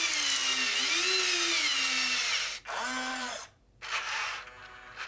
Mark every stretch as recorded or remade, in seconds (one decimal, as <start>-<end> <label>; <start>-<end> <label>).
0.0-3.1 recorded; 3.1-3.6 remade; 3.6-5.1 recorded